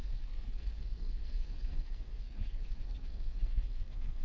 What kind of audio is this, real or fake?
fake